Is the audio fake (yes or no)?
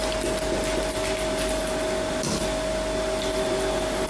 no